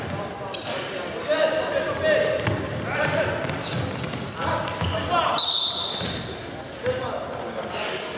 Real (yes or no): yes